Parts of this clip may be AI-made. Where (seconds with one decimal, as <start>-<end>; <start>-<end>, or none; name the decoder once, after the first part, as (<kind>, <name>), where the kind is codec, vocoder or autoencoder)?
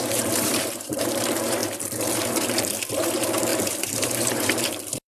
0.0-1.6 (vocoder, BigVGAN v2); 2.2-5.1